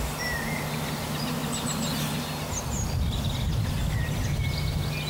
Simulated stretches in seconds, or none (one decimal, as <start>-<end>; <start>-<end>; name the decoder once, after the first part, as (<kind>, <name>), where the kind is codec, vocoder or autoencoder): none

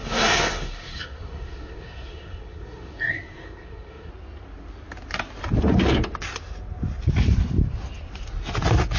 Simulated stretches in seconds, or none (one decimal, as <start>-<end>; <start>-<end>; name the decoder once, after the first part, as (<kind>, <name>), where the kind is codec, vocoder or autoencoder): 0.0-4.1 (codec, SNAC)

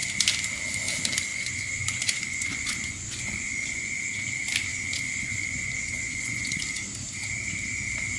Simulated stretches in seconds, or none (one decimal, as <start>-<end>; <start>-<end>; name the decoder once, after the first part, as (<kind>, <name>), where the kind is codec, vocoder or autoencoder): 1.3-4.0 (vocoder, Vocos); 4.7-6.6

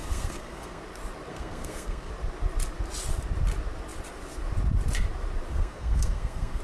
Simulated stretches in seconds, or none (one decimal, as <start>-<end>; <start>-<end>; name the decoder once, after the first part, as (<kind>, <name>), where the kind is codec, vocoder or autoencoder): 0.0-0.8 (codec, SNAC); 1.3-2.1; 5.5-6.6

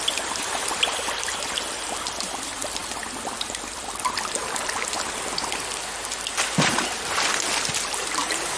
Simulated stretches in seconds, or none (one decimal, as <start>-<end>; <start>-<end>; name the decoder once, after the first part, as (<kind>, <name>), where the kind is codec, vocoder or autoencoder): none